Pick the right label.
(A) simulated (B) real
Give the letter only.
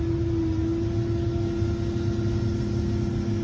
B